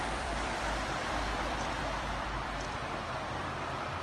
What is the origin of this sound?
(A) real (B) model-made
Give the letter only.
B